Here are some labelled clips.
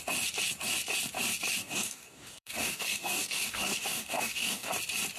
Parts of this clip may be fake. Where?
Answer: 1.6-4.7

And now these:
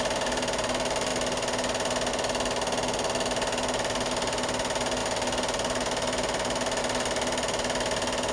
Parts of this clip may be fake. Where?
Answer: none

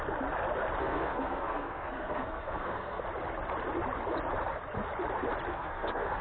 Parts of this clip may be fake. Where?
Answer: 0.8-3.0; 5.5-6.2

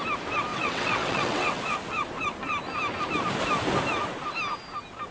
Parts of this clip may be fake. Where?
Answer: 0.5-1.6

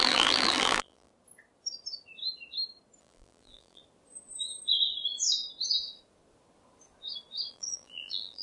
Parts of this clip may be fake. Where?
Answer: 0.0-1.1; 3.0-3.8; 7.5-8.4

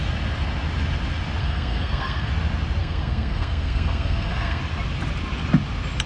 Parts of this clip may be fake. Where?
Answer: 1.4-2.3; 2.8-4.6